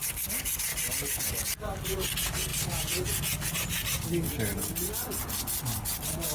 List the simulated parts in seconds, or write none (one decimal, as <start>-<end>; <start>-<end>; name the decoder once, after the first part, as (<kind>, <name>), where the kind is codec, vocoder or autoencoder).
none